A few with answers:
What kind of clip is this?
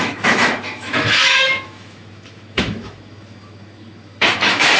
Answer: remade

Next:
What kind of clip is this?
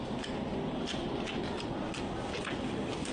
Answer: recorded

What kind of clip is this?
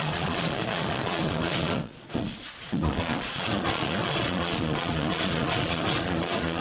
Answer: remade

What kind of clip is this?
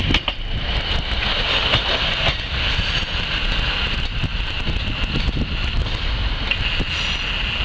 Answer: recorded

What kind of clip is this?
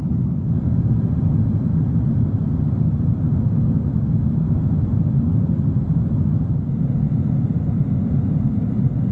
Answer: recorded